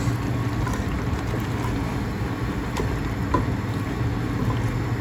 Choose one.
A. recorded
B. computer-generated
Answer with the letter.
A